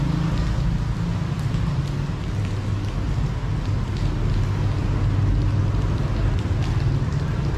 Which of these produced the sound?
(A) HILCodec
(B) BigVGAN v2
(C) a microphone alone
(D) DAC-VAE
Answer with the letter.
C